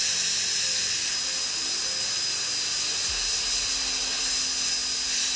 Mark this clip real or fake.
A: real